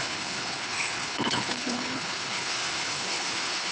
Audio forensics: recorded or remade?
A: remade